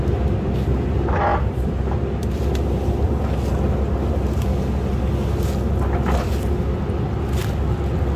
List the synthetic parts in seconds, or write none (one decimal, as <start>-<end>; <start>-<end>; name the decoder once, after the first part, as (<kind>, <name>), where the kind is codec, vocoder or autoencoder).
1.3-2.4 (vocoder, BigVGAN v2); 7.4-8.2